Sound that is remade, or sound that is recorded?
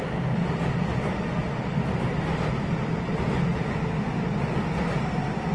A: recorded